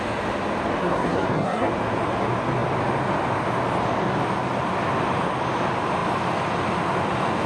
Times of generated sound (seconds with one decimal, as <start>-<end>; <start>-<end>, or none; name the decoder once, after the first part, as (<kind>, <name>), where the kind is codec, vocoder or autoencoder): 0.8-1.7 (codec, SNAC)